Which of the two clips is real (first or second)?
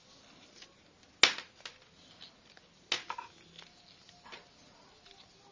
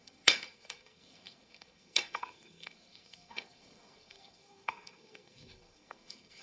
first